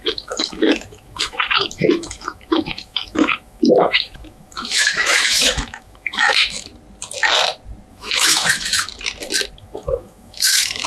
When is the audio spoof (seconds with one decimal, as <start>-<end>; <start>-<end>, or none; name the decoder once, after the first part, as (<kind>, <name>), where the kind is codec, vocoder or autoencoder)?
0.0-6.7 (autoencoder, DAC-VAE); 7.9-8.9; 9.6-10.9